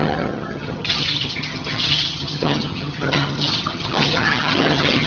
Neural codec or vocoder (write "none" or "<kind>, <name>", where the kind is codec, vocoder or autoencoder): vocoder, HiFi-GAN